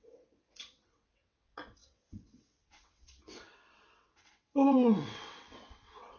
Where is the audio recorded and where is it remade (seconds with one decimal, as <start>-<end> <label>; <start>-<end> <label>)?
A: 0.0-6.2 remade